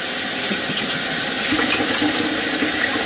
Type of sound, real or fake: real